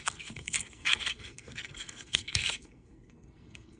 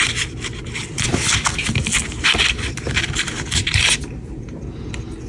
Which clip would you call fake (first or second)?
first